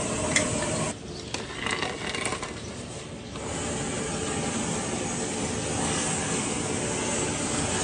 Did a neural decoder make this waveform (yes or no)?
no